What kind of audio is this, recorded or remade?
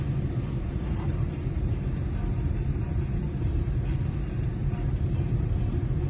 remade